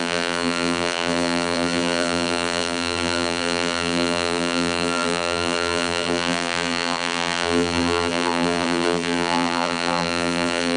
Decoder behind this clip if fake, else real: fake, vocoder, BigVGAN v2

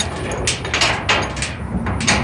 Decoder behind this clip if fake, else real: real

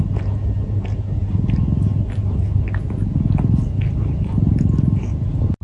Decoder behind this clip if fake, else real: real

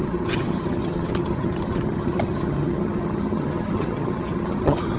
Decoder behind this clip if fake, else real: fake, vocoder, HiFi-GAN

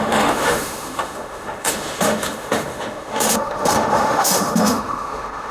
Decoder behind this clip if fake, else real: fake, autoencoder, DAC-VAE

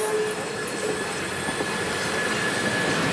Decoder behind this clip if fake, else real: real